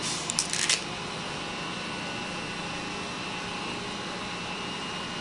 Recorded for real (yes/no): yes